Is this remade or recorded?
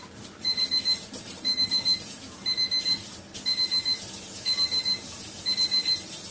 remade